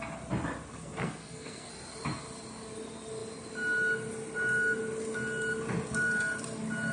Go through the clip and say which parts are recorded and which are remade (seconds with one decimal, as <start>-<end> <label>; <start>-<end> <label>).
0.0-0.7 recorded; 0.7-1.7 remade; 1.7-6.9 recorded

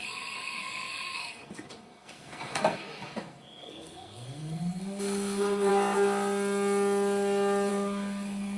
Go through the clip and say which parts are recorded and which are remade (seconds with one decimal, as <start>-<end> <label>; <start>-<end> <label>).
0.0-5.7 remade; 5.7-7.7 recorded; 7.7-8.6 remade

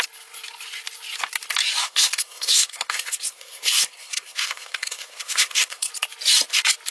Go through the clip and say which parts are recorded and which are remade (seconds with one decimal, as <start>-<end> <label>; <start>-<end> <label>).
0.0-1.8 recorded; 1.8-5.9 remade; 5.9-6.9 recorded

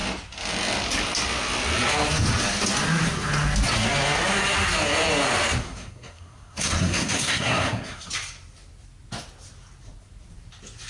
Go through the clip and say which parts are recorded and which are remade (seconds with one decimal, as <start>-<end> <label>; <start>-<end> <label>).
0.0-5.6 recorded; 5.6-8.1 remade; 8.1-10.9 recorded

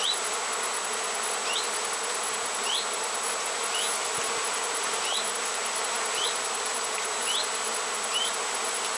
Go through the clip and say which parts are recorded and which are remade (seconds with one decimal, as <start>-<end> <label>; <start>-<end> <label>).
0.0-9.0 recorded

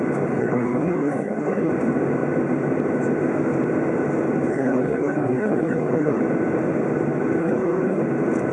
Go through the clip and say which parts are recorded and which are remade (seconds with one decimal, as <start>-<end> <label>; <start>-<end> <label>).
0.0-0.4 recorded; 0.4-1.7 remade; 1.7-4.5 recorded; 4.5-6.2 remade; 6.2-7.4 recorded; 7.4-8.0 remade; 8.0-8.5 recorded

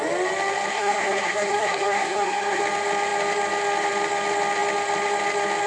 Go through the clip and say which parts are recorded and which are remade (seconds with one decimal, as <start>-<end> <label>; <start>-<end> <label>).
0.0-0.7 recorded; 0.7-2.6 remade; 2.6-5.7 recorded

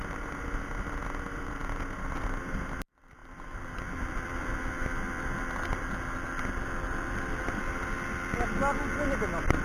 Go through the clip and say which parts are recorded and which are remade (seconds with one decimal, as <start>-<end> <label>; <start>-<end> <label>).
0.0-9.6 recorded